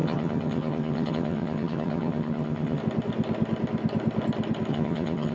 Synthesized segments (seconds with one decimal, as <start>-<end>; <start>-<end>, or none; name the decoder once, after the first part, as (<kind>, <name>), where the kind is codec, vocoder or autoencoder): 0.0-2.8 (vocoder, HiFi-GAN); 4.7-5.3